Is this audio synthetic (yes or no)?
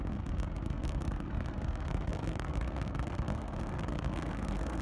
yes